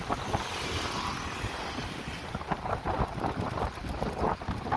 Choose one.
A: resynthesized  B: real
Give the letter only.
B